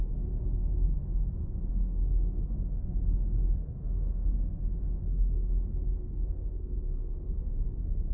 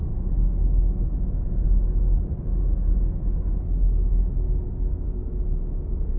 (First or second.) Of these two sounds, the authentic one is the second